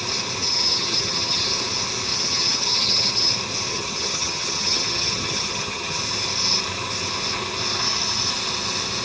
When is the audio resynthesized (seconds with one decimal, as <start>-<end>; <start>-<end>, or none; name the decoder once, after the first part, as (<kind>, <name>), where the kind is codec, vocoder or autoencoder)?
0.4-1.4 (vocoder, HiFi-GAN); 2.1-3.3; 3.7-6.0